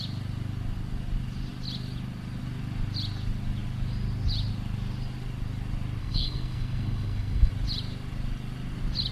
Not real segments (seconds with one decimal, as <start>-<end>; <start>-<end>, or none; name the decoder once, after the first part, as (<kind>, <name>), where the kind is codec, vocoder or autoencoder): 6.0-7.5 (codec, SNAC)